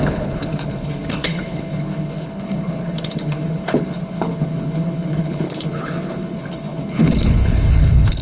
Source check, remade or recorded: remade